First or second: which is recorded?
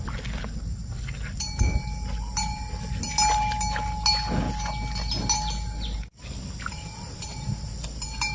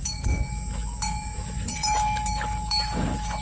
first